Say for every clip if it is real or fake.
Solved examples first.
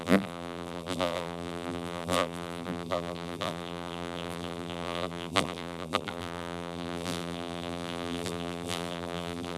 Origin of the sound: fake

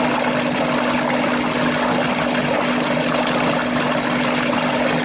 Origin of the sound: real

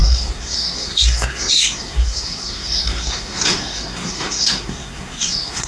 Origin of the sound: fake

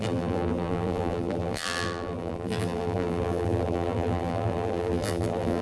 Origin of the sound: fake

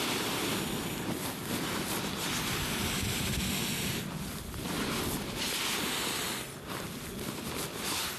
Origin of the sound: real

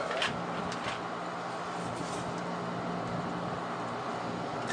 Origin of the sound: real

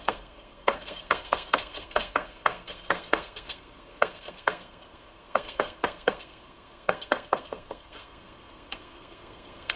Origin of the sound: fake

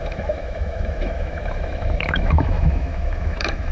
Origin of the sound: fake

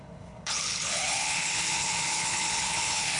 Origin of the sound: fake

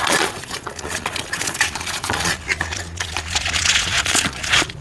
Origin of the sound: fake